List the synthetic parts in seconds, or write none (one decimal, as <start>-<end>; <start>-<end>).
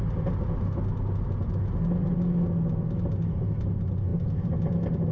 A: none